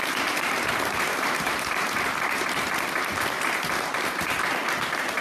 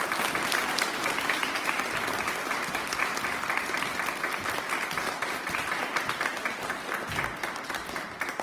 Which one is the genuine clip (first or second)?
second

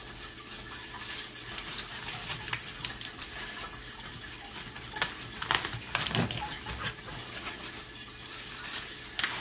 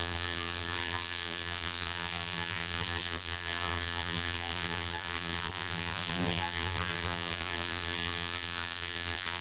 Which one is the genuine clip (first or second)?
first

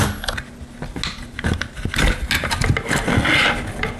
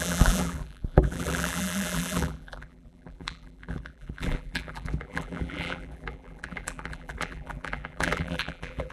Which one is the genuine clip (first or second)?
first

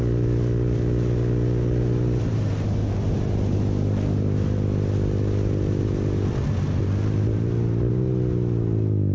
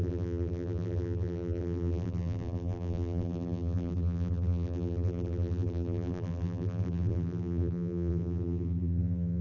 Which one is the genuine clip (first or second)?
first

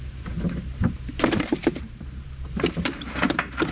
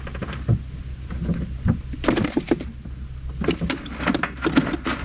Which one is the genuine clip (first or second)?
second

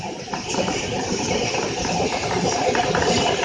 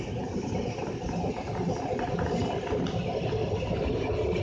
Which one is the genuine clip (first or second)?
second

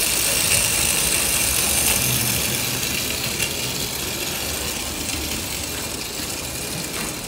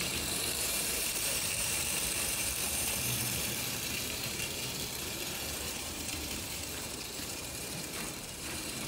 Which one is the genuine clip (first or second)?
first